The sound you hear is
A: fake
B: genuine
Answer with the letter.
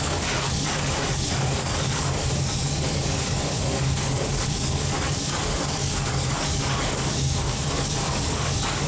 A